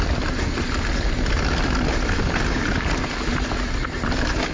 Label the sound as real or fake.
real